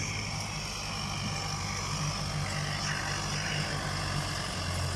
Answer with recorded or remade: recorded